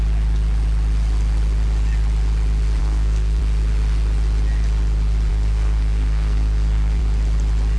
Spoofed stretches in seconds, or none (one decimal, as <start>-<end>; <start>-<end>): 2.8-3.4; 5.3-7.0